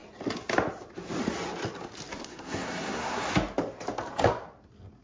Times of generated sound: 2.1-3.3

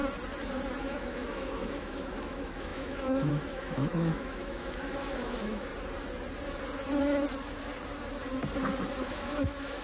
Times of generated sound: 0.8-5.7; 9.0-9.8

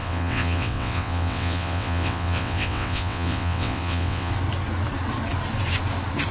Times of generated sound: 0.0-4.3

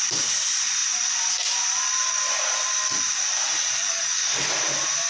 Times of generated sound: 3.8-4.5

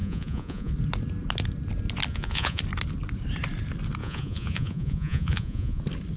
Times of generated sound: 0.0-0.7; 2.1-2.6; 4.0-5.8

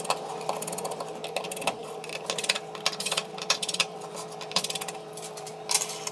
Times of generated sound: 3.2-5.5